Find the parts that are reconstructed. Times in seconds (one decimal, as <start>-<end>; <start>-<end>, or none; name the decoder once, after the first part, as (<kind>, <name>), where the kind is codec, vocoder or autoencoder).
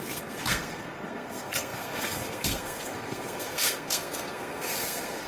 0.0-5.3 (codec, SNAC)